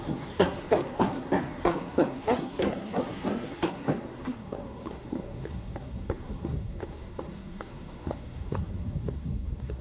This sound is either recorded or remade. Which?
remade